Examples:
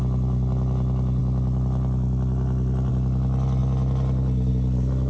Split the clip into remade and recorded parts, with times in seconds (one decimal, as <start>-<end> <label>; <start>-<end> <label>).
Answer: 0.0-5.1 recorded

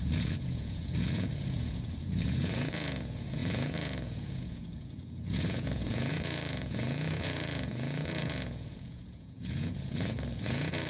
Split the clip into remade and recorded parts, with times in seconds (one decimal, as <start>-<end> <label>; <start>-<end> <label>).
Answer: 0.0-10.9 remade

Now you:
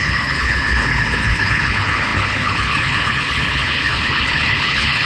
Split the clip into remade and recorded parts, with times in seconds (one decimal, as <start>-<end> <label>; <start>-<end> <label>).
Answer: 0.0-5.1 remade

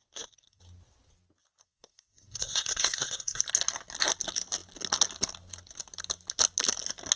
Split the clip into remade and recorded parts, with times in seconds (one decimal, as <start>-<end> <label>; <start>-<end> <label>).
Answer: 0.0-0.6 remade; 0.6-1.6 recorded; 1.6-3.4 remade; 3.4-7.2 recorded

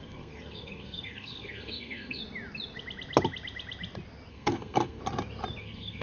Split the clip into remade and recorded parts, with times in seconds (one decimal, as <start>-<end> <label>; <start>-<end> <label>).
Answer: 0.0-2.2 remade; 2.2-4.3 recorded; 4.3-5.0 remade; 5.0-5.6 recorded; 5.6-6.0 remade

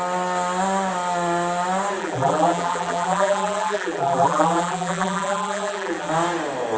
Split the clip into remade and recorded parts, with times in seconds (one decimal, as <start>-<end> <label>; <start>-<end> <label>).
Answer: 0.0-2.0 recorded; 2.0-6.1 remade; 6.1-6.8 recorded

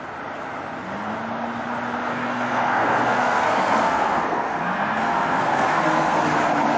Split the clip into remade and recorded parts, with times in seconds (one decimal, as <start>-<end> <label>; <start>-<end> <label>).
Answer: 0.0-2.1 recorded; 2.1-6.2 remade; 6.2-6.8 recorded